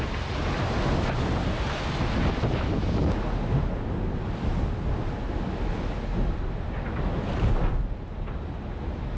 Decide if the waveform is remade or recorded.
recorded